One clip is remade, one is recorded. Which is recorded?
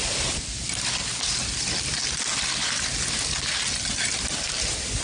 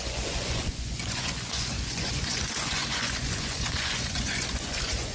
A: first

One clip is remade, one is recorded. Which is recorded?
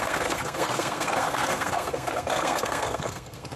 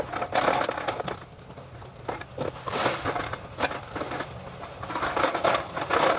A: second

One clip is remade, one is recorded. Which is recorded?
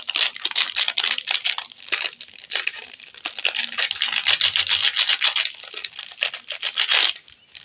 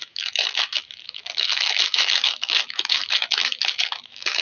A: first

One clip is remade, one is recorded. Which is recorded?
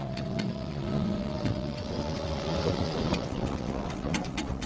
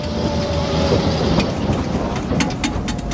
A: second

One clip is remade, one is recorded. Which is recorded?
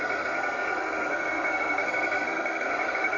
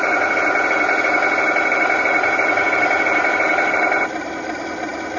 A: second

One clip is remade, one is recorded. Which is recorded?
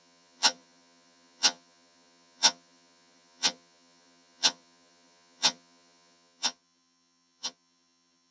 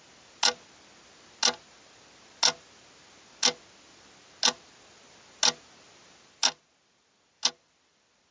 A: second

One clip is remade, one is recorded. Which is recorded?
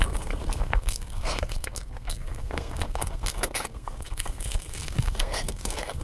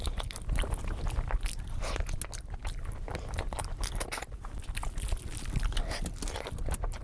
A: second